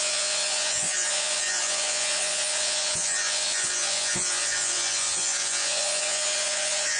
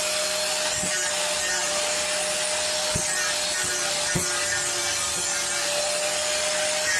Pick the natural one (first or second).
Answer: second